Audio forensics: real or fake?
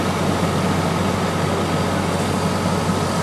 real